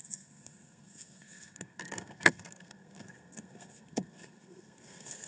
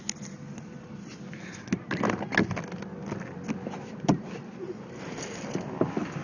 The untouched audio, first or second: second